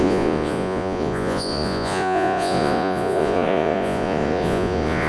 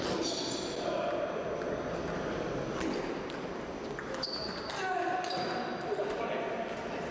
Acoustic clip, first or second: second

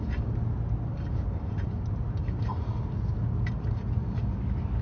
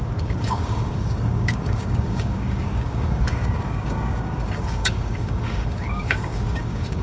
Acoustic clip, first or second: first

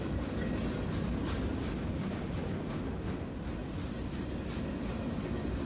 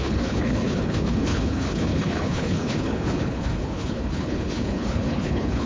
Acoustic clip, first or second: first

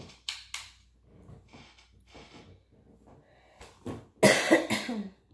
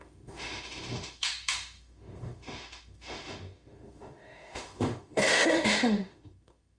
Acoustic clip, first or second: first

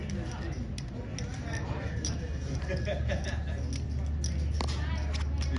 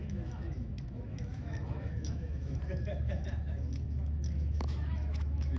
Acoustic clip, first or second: first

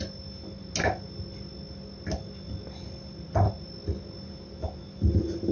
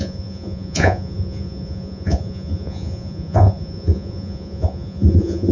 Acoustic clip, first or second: first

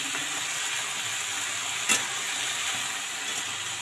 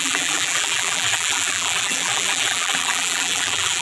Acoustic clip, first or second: first